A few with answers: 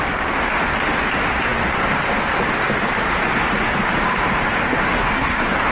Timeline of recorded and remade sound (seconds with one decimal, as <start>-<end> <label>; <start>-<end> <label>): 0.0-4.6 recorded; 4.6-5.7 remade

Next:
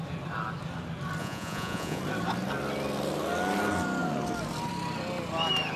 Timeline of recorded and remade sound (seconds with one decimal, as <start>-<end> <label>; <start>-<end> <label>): 0.0-1.2 recorded; 1.2-2.0 remade; 2.0-5.8 recorded

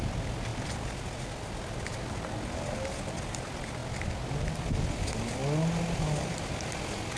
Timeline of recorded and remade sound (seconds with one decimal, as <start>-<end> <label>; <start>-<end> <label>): 0.0-7.2 recorded

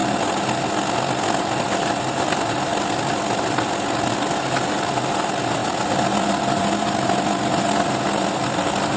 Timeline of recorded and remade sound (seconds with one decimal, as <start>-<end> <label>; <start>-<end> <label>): 0.0-9.0 recorded